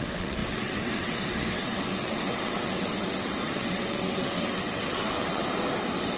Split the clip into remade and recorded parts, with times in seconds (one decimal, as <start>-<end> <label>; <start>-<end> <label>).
0.0-5.4 remade; 5.4-6.2 recorded